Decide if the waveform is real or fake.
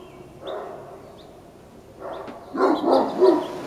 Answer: real